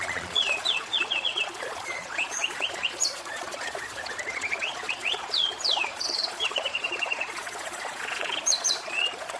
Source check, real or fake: fake